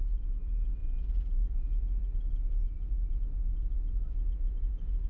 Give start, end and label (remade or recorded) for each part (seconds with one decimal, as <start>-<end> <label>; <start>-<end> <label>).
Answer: 0.0-2.1 remade; 2.1-2.8 recorded; 2.8-5.1 remade